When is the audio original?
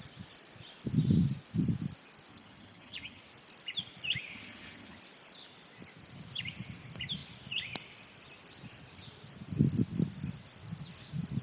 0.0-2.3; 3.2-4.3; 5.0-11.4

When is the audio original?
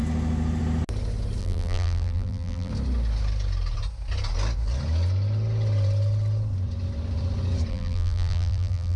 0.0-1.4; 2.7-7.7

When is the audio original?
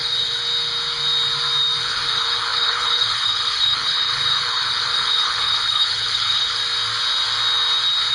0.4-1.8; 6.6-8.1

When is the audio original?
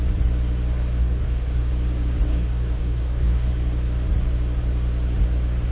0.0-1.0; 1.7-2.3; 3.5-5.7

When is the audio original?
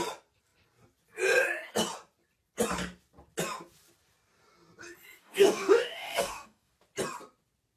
0.0-5.2; 6.7-7.8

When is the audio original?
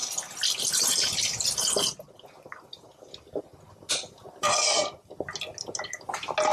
0.0-6.5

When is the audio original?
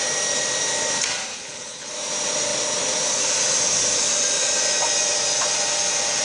0.0-1.3; 1.9-6.2